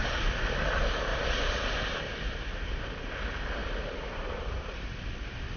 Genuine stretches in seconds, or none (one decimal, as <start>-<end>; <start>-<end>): 0.0-1.1; 2.0-3.6; 5.1-5.6